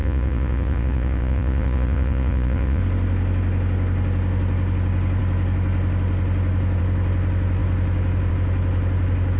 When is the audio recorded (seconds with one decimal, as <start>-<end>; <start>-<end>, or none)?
2.8-9.4